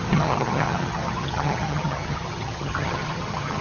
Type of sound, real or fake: fake